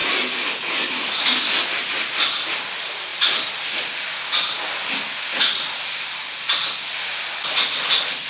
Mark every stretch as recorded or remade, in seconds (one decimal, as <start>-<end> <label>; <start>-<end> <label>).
0.0-8.3 recorded